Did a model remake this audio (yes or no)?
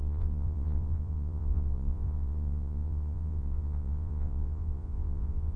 yes